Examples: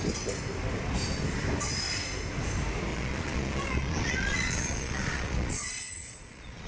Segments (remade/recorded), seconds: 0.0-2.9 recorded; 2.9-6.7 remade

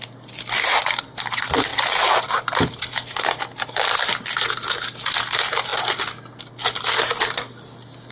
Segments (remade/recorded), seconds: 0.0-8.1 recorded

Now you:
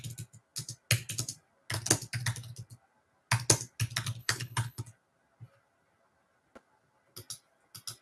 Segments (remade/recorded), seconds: 0.0-4.2 recorded; 4.2-4.8 remade; 4.8-8.0 recorded

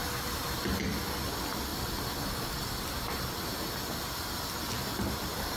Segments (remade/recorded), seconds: 0.0-0.8 remade; 0.8-4.9 recorded; 4.9-5.6 remade